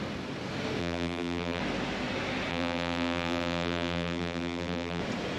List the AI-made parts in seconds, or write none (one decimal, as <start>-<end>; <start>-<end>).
0.8-1.6; 2.5-5.0